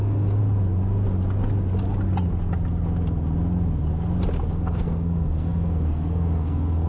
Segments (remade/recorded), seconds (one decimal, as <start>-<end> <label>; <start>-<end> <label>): 0.0-0.4 remade; 0.4-4.5 recorded; 4.5-6.9 remade